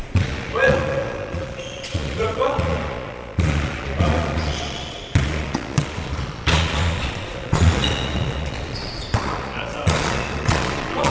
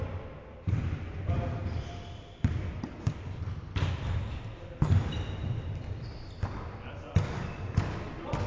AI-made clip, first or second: first